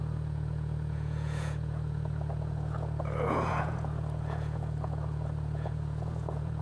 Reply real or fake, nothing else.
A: fake